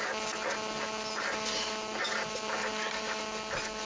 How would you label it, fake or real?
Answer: real